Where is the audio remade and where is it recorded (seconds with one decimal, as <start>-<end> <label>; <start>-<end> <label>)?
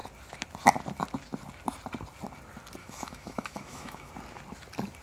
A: 0.0-2.8 recorded; 2.8-4.1 remade; 4.1-5.0 recorded